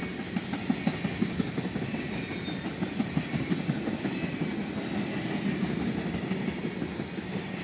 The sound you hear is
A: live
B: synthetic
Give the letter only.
A